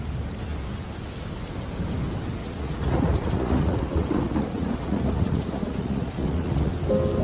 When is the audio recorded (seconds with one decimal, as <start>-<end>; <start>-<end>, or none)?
0.0-2.4; 6.7-7.2